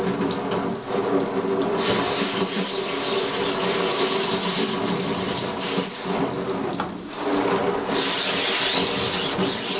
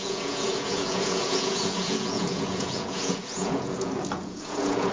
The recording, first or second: first